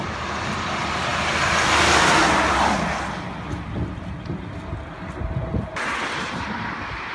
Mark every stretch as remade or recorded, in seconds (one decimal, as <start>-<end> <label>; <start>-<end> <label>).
0.0-7.1 recorded